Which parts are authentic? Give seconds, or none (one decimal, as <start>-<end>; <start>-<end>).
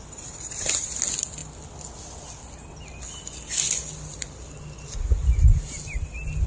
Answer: 0.0-6.5